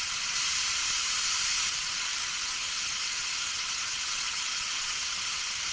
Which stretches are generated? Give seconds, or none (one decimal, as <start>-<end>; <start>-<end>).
0.0-5.7

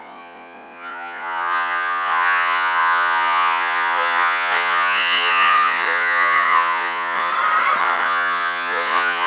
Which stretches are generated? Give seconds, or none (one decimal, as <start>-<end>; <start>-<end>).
0.0-7.3; 7.8-9.3

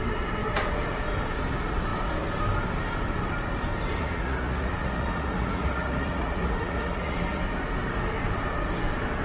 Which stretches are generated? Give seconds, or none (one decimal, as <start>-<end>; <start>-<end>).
4.0-7.4

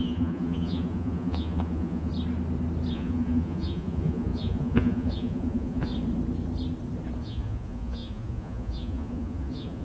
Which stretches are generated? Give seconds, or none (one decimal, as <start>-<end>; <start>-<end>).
0.0-2.1; 2.9-5.9; 7.2-9.8

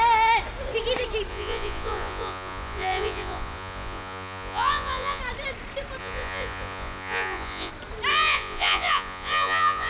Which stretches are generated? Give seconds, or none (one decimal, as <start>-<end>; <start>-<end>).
1.3-5.2; 6.0-7.7; 8.1-9.9